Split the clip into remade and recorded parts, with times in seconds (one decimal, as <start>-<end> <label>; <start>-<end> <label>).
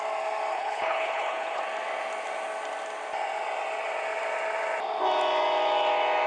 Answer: 0.0-0.5 recorded; 0.5-1.6 remade; 1.6-6.3 recorded